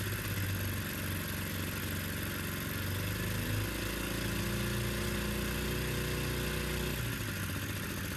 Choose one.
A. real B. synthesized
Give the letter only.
A